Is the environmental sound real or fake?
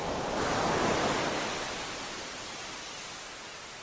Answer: real